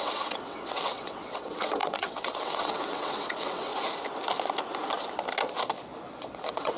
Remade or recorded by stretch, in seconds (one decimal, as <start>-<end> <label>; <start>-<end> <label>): 0.0-3.7 remade; 3.7-6.1 recorded; 6.1-6.8 remade